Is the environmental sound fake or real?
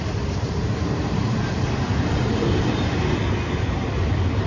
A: real